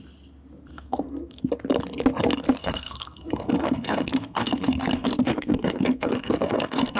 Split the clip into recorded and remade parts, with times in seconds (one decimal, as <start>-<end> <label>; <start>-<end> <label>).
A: 0.0-0.7 recorded; 0.7-1.4 remade; 1.4-2.6 recorded; 2.6-7.0 remade